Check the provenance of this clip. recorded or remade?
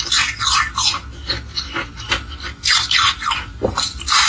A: recorded